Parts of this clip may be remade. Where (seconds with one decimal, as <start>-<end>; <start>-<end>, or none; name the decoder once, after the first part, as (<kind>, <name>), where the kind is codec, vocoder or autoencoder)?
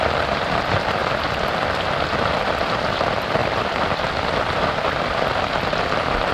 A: 0.0-6.3 (vocoder, BigVGAN v2)